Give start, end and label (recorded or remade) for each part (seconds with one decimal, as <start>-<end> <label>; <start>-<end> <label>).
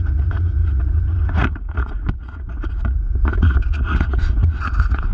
0.0-5.1 remade